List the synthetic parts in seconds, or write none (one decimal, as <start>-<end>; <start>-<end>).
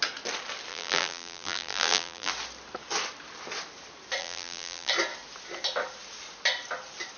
0.7-2.3; 4.2-4.9